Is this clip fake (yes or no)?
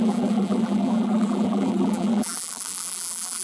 yes